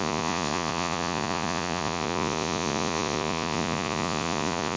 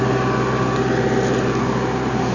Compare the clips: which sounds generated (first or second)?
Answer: first